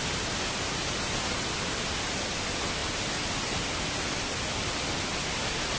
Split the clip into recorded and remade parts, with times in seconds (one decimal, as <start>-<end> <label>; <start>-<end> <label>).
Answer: 0.0-5.8 recorded

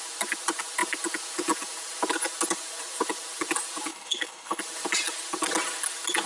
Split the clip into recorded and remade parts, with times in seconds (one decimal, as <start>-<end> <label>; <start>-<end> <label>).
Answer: 0.0-3.9 recorded; 3.9-4.6 remade; 4.6-6.3 recorded

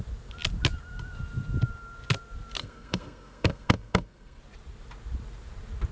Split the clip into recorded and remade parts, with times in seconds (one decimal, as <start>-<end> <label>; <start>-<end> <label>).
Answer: 0.0-2.6 recorded; 2.6-4.4 remade; 4.4-5.9 recorded

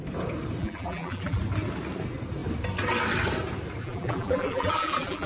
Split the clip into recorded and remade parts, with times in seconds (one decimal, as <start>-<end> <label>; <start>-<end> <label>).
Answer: 0.0-0.6 recorded; 0.6-1.4 remade; 1.4-3.8 recorded; 3.8-5.3 remade

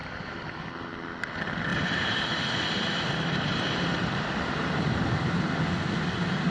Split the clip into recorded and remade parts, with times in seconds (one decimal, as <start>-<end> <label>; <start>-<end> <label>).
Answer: 0.0-0.7 remade; 0.7-1.7 recorded; 1.7-5.6 remade; 5.6-6.5 recorded